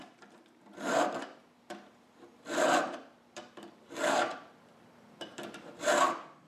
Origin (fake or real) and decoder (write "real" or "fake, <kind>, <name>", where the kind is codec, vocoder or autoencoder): fake, vocoder, BigVGAN v2